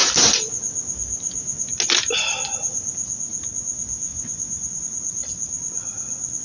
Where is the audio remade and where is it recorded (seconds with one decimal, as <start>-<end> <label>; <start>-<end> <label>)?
0.0-4.1 recorded; 4.1-4.8 remade; 4.8-6.4 recorded